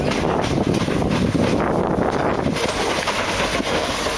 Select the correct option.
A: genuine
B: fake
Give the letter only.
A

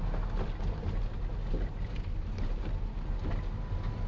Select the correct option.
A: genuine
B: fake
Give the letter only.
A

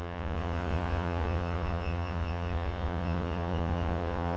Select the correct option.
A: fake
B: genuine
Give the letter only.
A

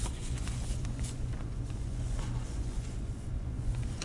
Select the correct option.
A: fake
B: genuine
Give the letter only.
A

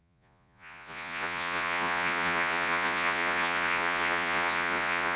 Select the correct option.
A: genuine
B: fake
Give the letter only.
B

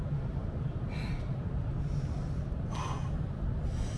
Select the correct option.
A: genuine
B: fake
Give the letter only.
A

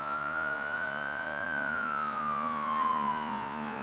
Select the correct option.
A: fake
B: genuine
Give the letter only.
A